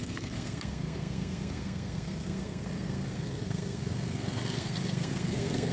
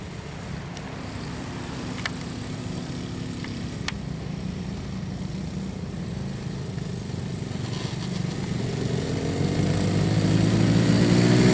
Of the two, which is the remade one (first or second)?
first